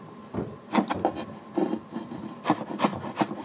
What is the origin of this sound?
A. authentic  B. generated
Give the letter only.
A